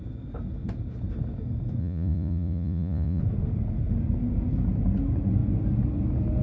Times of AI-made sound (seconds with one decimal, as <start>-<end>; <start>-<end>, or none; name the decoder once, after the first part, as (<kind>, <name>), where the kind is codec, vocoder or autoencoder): 1.8-3.2 (vocoder, Vocos)